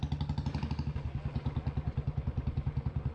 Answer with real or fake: real